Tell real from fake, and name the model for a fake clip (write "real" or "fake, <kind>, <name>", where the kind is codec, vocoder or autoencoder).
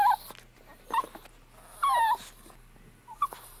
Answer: real